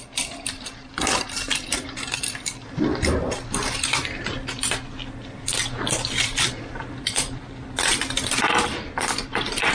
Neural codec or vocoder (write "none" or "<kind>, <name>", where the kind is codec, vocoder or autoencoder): vocoder, BigVGAN v2